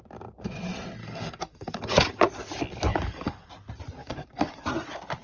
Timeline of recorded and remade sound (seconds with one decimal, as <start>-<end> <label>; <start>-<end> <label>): 0.0-1.0 recorded; 1.0-2.2 remade; 2.2-2.9 recorded; 2.9-3.5 remade; 3.5-4.0 recorded; 4.0-4.6 remade; 4.6-5.2 recorded